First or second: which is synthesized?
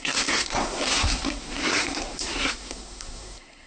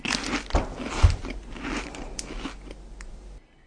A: first